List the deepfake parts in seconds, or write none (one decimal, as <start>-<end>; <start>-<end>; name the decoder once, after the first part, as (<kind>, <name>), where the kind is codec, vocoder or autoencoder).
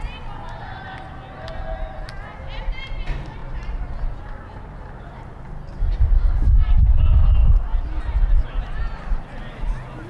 none